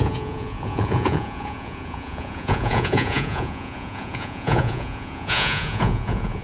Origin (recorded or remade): remade